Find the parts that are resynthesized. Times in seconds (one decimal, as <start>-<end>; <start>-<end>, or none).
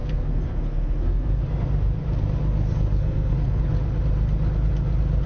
0.0-1.4; 3.0-3.6